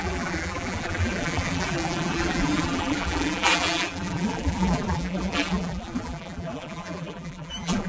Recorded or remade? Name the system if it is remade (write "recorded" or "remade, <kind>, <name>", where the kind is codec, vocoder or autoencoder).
remade, vocoder, BigVGAN v2